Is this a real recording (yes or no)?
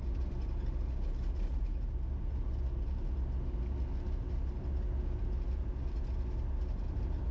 yes